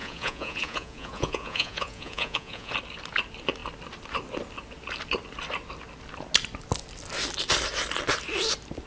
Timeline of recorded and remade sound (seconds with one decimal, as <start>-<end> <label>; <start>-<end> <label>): 0.0-2.7 remade; 2.7-8.9 recorded